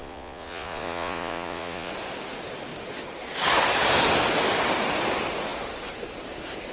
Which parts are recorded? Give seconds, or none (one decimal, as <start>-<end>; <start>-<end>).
1.9-6.7